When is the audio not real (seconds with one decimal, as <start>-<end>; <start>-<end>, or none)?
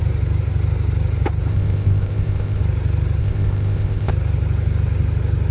1.5-2.6; 3.2-4.1